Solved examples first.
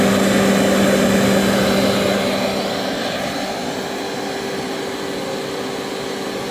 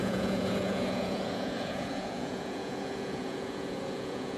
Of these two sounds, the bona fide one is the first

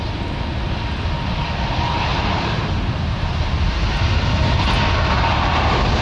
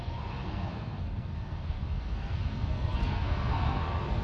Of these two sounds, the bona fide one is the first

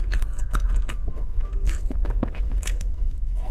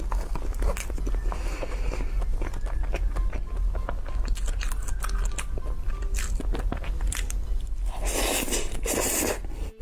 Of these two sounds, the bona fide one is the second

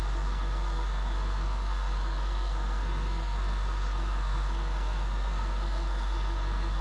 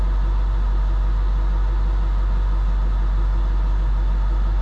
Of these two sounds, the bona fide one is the second